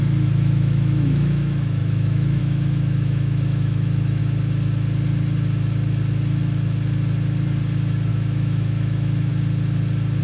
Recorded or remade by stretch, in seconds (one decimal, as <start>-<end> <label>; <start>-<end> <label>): 0.0-4.2 remade; 4.2-8.1 recorded; 8.1-9.3 remade; 9.3-10.2 recorded